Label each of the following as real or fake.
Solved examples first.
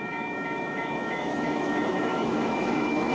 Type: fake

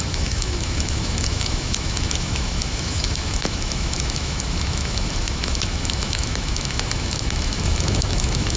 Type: fake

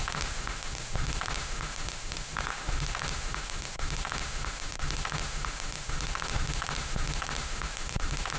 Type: fake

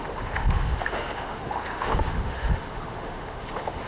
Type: fake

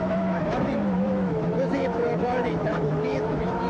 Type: fake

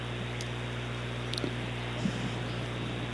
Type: real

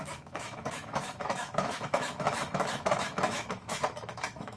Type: fake